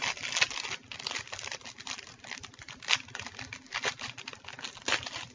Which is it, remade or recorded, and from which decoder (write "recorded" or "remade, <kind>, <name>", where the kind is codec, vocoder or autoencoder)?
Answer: recorded